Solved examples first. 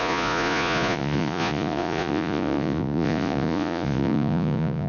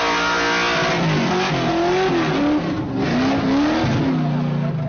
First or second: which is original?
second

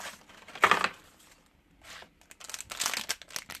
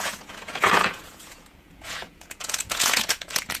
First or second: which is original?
first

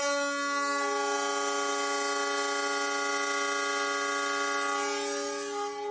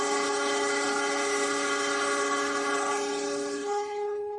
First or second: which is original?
first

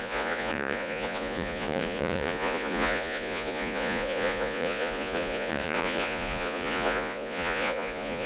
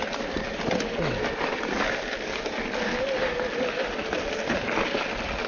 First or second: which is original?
second